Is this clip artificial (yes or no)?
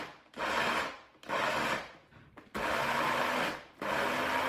no